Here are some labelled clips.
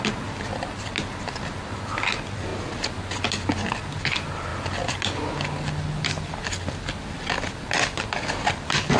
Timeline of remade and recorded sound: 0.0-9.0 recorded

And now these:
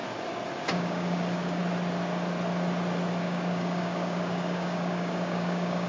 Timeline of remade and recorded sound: 0.0-0.7 recorded; 0.7-1.6 remade; 1.6-3.2 recorded; 3.2-5.9 remade

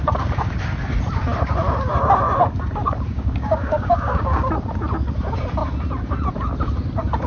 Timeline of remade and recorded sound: 0.0-3.1 recorded; 3.1-4.4 remade; 4.4-7.3 recorded

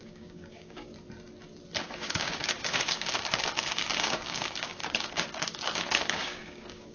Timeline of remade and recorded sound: 0.0-0.9 remade; 0.9-1.8 recorded; 1.8-6.9 remade

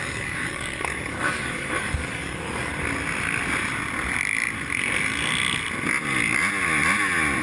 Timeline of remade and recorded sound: 0.0-2.7 remade; 2.7-7.4 recorded

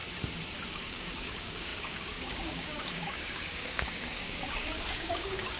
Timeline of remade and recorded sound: 0.0-0.7 recorded; 0.7-5.6 remade

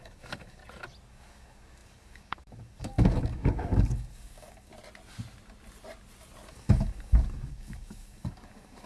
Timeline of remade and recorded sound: 0.0-0.6 remade; 0.6-1.1 recorded; 1.1-4.7 remade; 4.7-6.5 recorded; 6.5-8.9 remade